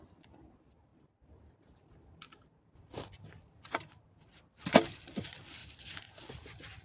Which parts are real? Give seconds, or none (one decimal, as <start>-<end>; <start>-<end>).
0.0-0.9; 4.3-5.6